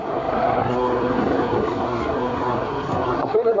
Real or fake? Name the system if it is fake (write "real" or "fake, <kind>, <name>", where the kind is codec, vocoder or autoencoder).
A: fake, codec, SNAC